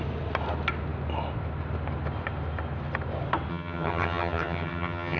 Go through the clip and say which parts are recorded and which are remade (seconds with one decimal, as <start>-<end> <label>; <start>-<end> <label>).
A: 0.0-3.5 recorded; 3.5-5.2 remade